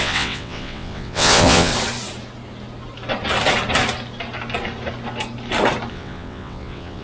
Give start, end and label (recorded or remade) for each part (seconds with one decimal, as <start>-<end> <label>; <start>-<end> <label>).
0.0-1.7 remade; 1.7-5.9 recorded; 5.9-7.0 remade